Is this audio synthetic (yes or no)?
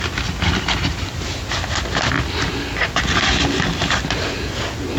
no